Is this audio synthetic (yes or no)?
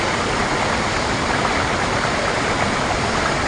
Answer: no